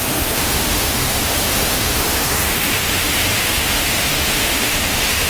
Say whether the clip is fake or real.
fake